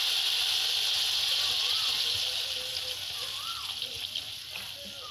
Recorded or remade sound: recorded